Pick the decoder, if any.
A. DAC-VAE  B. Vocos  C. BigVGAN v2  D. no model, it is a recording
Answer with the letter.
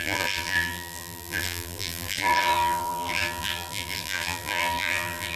C